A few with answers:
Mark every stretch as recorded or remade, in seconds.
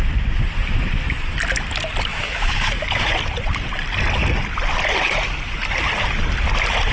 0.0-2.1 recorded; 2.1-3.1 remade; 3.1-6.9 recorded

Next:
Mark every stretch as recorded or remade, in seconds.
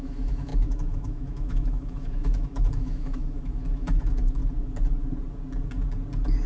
0.0-4.4 remade; 4.4-6.5 recorded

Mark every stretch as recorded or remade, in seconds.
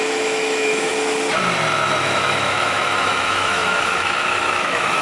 0.0-0.9 remade; 0.9-2.0 recorded; 2.0-5.0 remade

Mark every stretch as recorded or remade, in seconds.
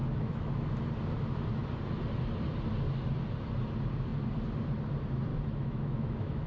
0.0-0.8 remade; 0.8-5.3 recorded; 5.3-6.5 remade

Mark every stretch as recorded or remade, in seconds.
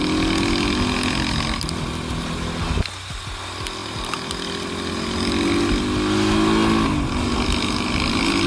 0.0-8.5 recorded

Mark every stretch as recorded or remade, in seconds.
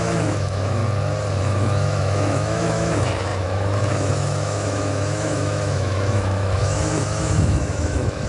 0.0-0.8 remade; 0.8-1.4 recorded; 1.4-8.3 remade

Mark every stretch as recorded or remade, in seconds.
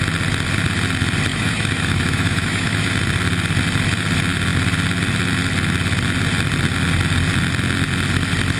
0.0-1.3 recorded; 1.3-2.9 remade; 2.9-8.6 recorded